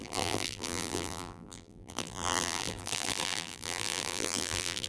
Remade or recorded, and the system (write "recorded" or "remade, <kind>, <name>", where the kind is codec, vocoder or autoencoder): remade, vocoder, BigVGAN v2